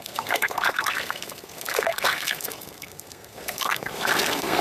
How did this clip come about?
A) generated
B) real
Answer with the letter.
A